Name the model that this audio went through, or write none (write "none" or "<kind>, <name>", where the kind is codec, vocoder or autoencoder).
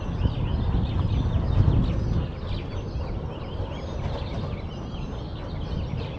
none